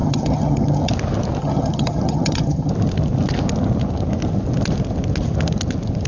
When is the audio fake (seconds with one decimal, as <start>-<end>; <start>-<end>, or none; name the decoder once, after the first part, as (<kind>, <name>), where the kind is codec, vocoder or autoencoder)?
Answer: 0.0-0.9 (vocoder, HiFi-GAN); 1.4-2.7